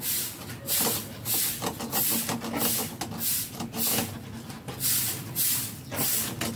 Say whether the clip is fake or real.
real